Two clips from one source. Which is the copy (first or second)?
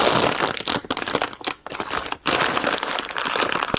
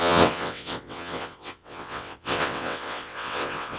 second